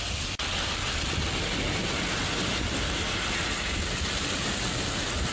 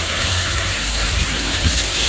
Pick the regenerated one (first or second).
second